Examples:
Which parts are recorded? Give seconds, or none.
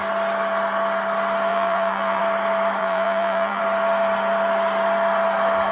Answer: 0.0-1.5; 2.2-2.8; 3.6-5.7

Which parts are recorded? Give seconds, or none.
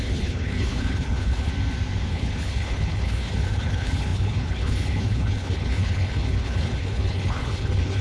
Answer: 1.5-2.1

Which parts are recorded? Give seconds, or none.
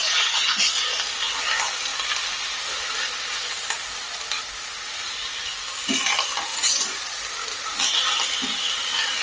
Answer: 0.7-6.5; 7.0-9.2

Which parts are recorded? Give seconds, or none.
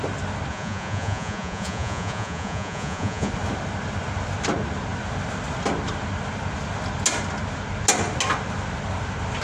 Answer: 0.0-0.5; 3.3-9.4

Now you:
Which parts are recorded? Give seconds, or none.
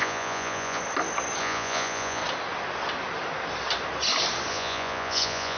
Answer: 0.8-1.4; 2.2-4.5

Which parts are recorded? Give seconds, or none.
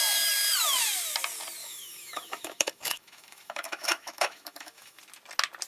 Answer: 0.0-1.6; 5.0-5.7